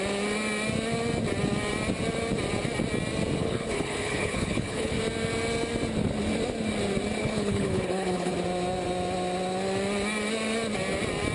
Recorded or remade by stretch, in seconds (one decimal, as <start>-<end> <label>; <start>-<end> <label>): 0.0-3.4 recorded; 3.4-5.0 remade; 5.0-7.2 recorded; 7.2-8.3 remade; 8.3-11.3 recorded